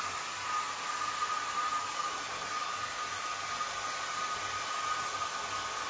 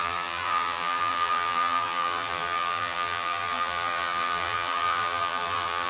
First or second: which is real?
first